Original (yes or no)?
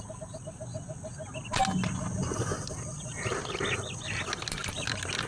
yes